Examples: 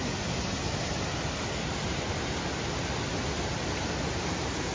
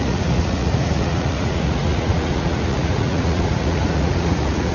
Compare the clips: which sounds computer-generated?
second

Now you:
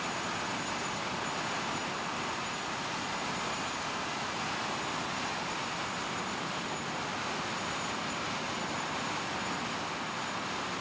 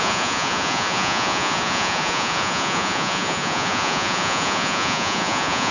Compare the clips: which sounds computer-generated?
second